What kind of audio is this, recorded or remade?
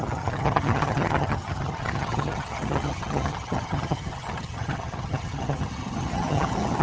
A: remade